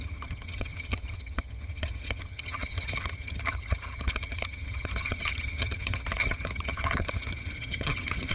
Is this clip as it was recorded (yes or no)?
no